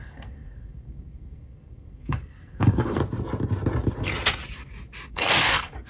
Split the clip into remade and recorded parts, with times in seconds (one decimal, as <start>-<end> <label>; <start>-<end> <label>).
0.0-3.0 remade; 3.0-5.1 recorded; 5.1-5.9 remade